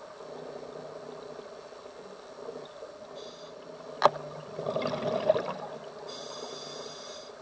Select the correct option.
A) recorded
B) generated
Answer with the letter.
A